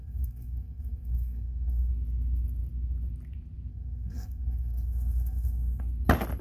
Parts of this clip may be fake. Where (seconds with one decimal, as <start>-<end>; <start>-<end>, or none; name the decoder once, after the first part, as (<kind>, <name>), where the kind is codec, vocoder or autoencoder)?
0.0-1.9 (codec, SNAC); 3.7-5.8